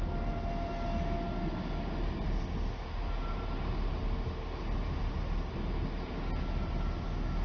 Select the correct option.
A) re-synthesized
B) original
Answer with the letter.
B